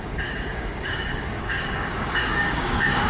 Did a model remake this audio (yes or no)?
yes